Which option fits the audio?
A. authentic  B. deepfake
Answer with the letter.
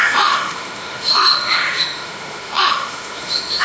B